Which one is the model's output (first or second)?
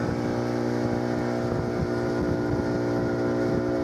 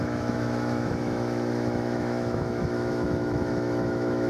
second